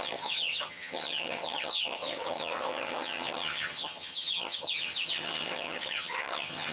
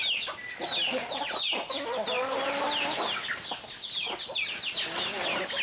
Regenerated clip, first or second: first